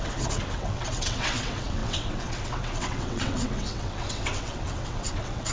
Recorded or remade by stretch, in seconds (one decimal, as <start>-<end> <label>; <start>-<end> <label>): 0.0-5.5 remade